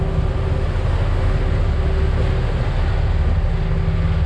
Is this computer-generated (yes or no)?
no